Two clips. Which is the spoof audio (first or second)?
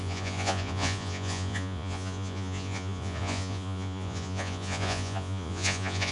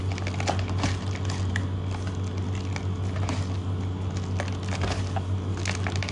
first